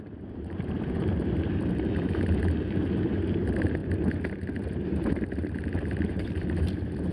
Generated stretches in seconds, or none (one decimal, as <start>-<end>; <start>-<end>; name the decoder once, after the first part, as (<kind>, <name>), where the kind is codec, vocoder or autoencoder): 0.0-3.8 (vocoder, BigVGAN v2); 4.5-7.1